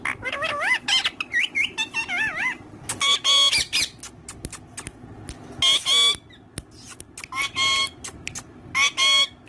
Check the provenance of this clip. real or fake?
real